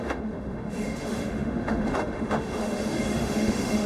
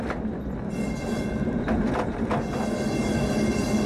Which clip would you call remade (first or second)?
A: first